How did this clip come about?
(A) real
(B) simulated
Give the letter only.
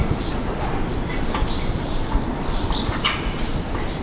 A